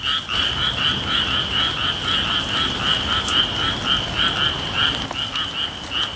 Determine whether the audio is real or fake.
real